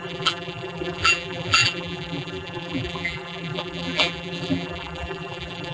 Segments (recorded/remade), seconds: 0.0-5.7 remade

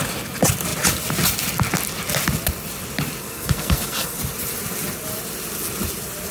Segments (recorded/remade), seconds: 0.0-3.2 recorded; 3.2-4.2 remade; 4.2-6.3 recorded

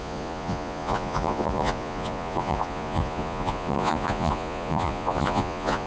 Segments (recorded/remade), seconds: 0.0-5.9 remade

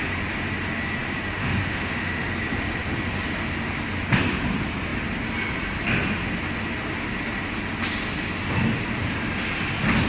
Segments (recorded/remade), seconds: 0.0-1.4 recorded; 1.4-2.3 remade; 2.3-10.1 recorded